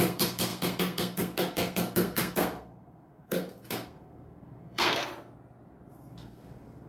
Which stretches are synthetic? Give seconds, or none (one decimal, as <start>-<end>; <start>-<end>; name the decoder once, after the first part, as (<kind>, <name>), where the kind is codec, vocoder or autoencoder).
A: 0.0-5.1 (codec, SNAC); 5.9-6.9